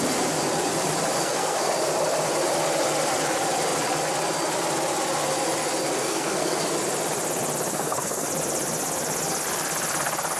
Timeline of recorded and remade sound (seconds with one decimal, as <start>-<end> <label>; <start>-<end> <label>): 0.0-1.2 recorded; 1.2-1.7 remade; 1.7-6.0 recorded; 6.0-6.7 remade; 6.7-7.7 recorded; 7.7-8.3 remade; 8.3-10.4 recorded